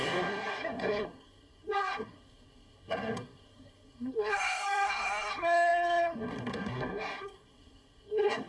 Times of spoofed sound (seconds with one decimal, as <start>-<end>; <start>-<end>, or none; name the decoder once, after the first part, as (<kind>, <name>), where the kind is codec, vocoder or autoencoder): 0.0-8.5 (codec, SNAC)